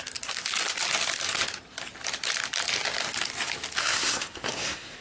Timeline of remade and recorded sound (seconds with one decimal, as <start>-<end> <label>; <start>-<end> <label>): 0.0-3.8 recorded; 3.8-5.0 remade